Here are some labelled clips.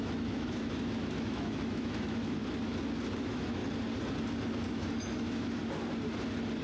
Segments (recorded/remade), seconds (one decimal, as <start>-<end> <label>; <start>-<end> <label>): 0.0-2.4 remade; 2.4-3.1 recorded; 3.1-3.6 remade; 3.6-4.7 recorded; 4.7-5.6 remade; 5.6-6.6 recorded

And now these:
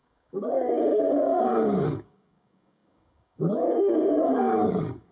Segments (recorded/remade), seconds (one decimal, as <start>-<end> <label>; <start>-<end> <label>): 0.0-5.1 remade

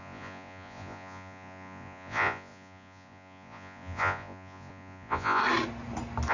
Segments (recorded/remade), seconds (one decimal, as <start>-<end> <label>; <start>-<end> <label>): 0.0-5.4 remade; 5.4-6.3 recorded

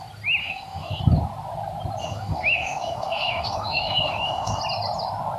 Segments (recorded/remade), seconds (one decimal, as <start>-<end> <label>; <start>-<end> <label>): 0.0-0.4 recorded; 0.4-1.0 remade; 1.0-2.0 recorded; 2.0-4.6 remade; 4.6-5.4 recorded

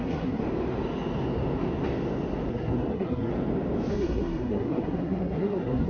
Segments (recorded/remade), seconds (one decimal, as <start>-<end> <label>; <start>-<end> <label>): 0.0-0.4 remade; 0.4-2.5 recorded; 2.5-3.3 remade; 3.3-3.9 recorded; 3.9-5.9 remade

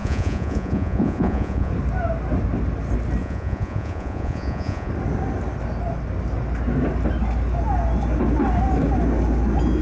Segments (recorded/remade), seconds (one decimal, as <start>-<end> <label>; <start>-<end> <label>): 0.0-1.7 remade; 1.7-3.2 recorded; 3.2-4.9 remade; 4.9-9.8 recorded

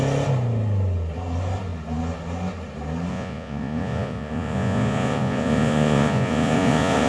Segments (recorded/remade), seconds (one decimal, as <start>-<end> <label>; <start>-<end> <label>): 0.0-3.1 recorded; 3.1-7.1 remade

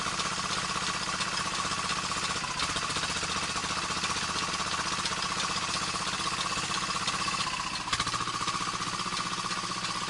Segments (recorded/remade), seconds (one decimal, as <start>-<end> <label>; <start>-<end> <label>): 0.0-10.1 recorded